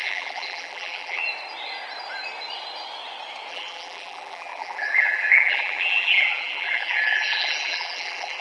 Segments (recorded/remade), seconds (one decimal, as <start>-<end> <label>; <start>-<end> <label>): 0.0-1.2 remade; 1.2-3.5 recorded; 3.5-8.4 remade